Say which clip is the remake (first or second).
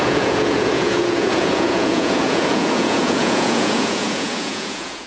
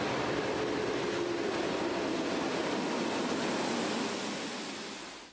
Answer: first